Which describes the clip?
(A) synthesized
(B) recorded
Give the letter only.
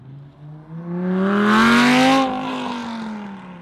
B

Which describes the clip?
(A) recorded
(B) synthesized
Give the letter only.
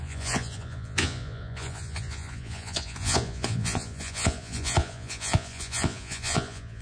B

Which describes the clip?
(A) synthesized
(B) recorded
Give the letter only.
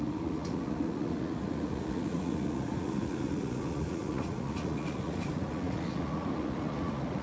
A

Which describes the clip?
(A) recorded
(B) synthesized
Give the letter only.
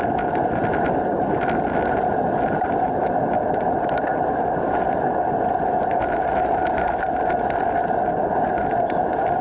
A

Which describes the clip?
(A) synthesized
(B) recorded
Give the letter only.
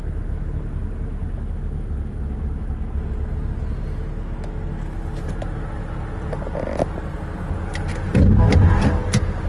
B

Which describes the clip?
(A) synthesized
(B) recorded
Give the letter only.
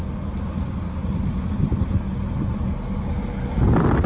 B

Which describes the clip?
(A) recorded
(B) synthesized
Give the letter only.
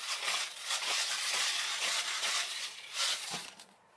B